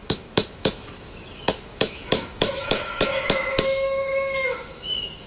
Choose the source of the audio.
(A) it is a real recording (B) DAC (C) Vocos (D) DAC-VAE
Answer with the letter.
D